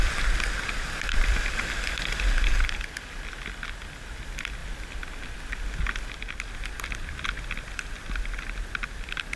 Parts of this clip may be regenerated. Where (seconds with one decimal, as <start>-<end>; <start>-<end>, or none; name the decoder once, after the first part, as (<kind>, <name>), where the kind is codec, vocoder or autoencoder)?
0.0-4.6 (vocoder, BigVGAN v2); 8.9-9.4